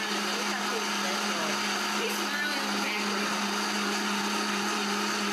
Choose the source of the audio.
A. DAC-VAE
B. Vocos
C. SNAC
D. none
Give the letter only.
D